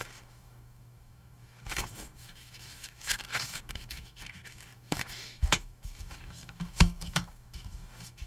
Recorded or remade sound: remade